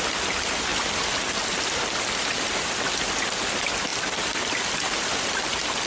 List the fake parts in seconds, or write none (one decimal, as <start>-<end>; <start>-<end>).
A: none